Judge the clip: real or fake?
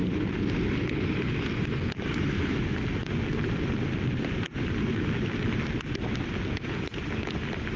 real